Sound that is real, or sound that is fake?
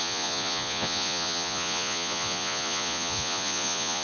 fake